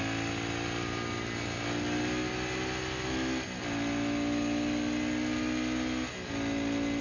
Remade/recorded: recorded